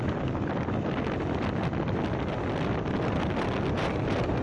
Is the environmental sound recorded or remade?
recorded